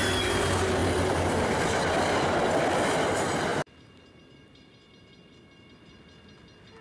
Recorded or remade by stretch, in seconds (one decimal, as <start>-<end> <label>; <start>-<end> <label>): 0.0-0.8 recorded; 0.8-1.3 remade; 1.3-3.5 recorded; 3.5-4.2 remade; 4.2-6.8 recorded